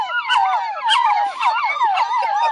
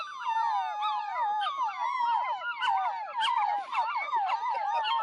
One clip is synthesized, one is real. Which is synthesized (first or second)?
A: first